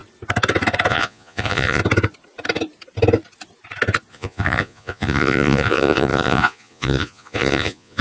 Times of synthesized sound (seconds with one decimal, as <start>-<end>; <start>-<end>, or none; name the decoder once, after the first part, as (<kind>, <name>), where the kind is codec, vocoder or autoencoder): 0.9-1.8 (vocoder, Vocos); 4.1-8.0